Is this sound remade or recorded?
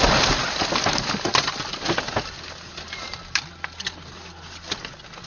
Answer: recorded